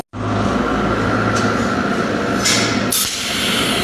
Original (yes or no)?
yes